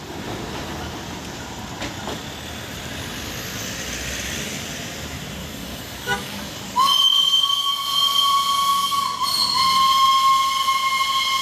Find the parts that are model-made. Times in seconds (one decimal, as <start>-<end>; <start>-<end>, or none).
5.4-7.7; 8.7-9.2

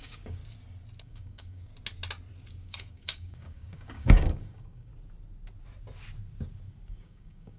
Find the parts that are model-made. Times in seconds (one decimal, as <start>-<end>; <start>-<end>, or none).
0.0-0.4; 1.0-1.7; 2.5-4.9; 6.9-7.6

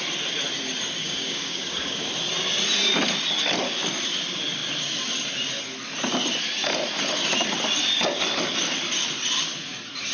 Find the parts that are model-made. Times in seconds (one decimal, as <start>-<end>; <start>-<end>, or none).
1.0-2.1

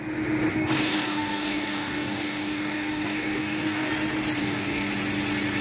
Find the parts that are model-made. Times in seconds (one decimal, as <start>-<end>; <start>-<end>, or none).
0.5-3.9; 4.4-4.9